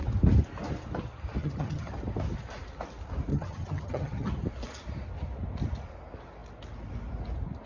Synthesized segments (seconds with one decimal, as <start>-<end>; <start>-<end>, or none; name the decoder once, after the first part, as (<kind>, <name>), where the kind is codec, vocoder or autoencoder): 1.4-1.9 (vocoder, HiFi-GAN); 3.3-4.3